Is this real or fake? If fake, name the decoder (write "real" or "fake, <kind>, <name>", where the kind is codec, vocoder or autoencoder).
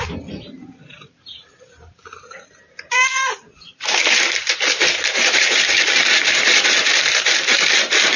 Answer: fake, vocoder, BigVGAN v2